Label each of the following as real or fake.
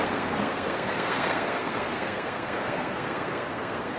fake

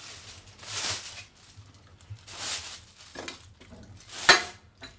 real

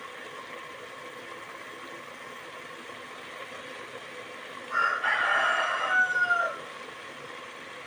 real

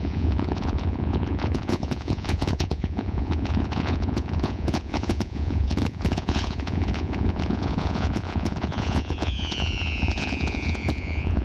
fake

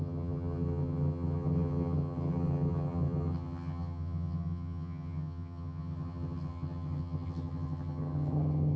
fake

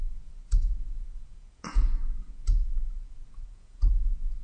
fake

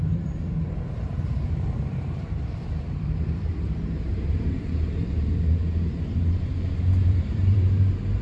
fake